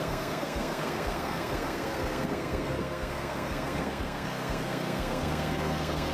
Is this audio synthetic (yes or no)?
yes